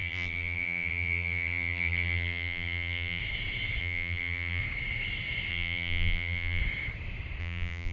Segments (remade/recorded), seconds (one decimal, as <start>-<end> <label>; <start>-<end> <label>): 0.0-3.2 remade; 3.2-3.8 recorded; 3.8-4.6 remade; 4.6-5.5 recorded; 5.5-6.6 remade; 6.6-7.4 recorded; 7.4-7.9 remade